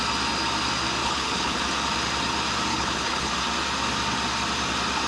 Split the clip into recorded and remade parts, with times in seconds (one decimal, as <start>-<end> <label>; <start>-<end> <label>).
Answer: 0.0-1.0 recorded; 1.0-1.6 remade; 1.6-2.7 recorded; 2.7-3.3 remade; 3.3-5.1 recorded